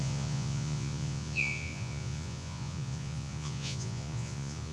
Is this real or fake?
fake